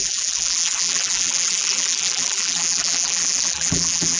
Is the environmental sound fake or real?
fake